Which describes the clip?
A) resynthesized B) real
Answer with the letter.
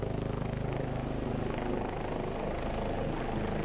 B